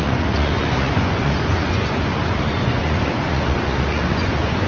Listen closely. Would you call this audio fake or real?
fake